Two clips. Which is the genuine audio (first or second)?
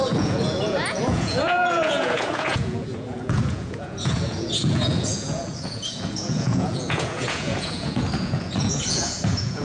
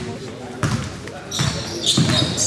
second